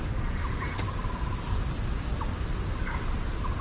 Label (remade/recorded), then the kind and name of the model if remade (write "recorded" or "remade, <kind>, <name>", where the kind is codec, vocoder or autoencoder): recorded